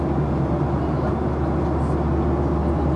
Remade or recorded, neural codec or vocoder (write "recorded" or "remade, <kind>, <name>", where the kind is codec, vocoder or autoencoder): recorded